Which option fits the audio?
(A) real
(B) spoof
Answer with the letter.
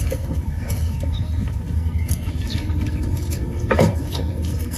B